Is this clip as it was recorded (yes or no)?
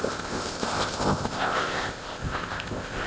no